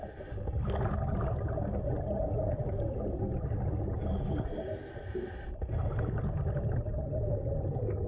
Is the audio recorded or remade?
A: recorded